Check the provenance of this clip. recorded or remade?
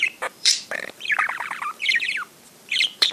remade